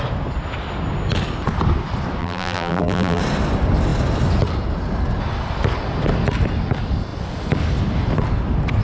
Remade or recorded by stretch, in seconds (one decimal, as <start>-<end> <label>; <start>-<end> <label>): 0.0-2.2 recorded; 2.2-3.2 remade; 3.2-8.8 recorded